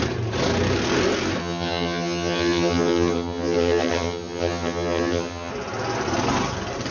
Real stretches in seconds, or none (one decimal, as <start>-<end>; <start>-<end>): 0.0-1.4; 5.5-6.9